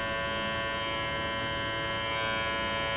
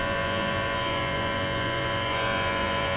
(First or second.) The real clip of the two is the first